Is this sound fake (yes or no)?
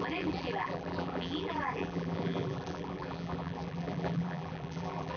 yes